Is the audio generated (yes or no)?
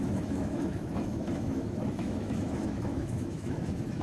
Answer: yes